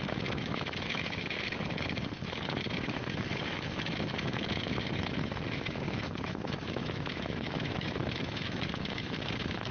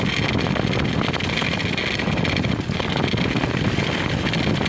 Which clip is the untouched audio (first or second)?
second